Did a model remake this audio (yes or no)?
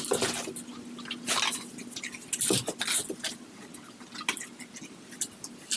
no